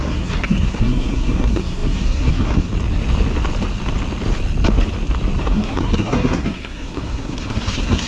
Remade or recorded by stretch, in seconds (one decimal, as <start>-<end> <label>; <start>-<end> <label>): 0.0-2.7 remade; 2.7-5.4 recorded; 5.4-8.1 remade